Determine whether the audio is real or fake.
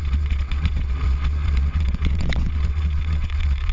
fake